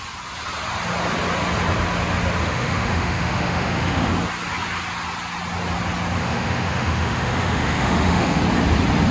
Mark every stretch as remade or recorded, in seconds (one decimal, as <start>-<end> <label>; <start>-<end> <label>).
0.0-2.4 recorded; 2.4-4.1 remade; 4.1-6.2 recorded; 6.2-8.4 remade; 8.4-9.1 recorded